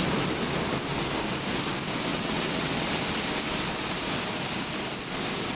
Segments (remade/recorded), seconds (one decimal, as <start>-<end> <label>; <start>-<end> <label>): 0.0-2.1 recorded; 2.1-2.9 remade; 2.9-5.5 recorded